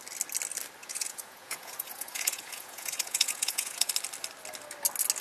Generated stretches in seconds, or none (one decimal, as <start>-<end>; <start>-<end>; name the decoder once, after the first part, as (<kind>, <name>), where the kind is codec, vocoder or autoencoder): 0.8-3.9 (vocoder, Vocos)